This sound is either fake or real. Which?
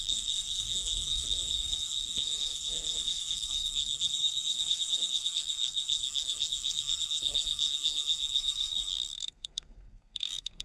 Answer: fake